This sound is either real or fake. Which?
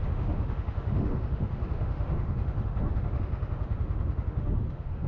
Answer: fake